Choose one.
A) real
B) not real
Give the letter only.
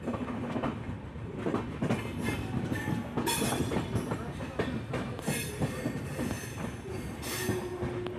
A